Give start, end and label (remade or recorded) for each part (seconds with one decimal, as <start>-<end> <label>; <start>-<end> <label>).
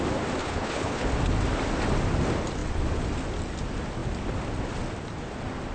0.0-0.4 recorded; 0.4-1.1 remade; 1.1-5.7 recorded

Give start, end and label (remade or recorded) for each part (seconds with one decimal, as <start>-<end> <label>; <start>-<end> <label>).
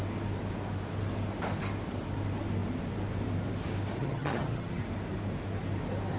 0.0-4.0 recorded; 4.0-4.8 remade; 4.8-6.2 recorded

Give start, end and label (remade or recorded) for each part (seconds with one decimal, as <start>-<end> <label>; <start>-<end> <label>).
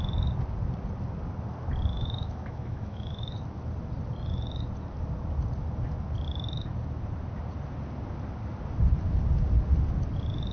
0.0-1.9 recorded; 1.9-3.3 remade; 3.3-10.5 recorded